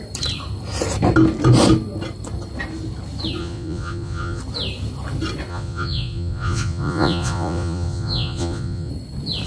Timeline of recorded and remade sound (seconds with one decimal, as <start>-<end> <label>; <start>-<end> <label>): 0.0-3.4 recorded; 3.4-4.4 remade; 4.4-5.5 recorded; 5.5-8.9 remade; 8.9-9.5 recorded